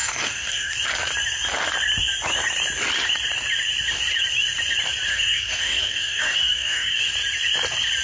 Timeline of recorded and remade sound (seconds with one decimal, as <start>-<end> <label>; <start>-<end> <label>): 0.0-0.7 remade; 0.7-5.1 recorded; 5.1-7.0 remade; 7.0-8.0 recorded